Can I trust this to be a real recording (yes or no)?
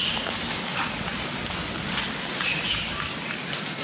yes